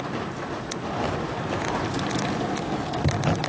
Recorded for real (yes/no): yes